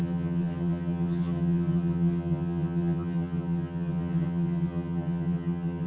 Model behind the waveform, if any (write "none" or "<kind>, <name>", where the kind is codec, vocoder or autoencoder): vocoder, HiFi-GAN